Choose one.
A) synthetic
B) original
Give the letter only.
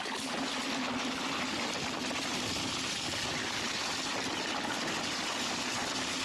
B